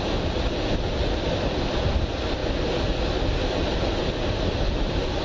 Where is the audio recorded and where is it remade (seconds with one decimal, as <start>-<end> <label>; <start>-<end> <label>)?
0.0-5.2 recorded